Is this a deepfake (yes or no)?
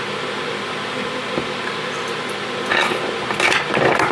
no